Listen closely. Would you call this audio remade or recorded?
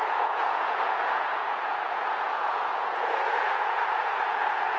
remade